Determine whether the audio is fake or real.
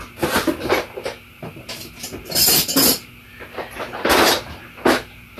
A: real